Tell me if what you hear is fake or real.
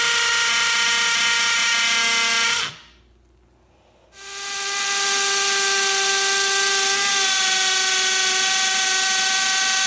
real